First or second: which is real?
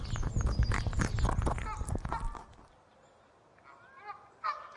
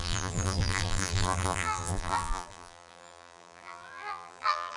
first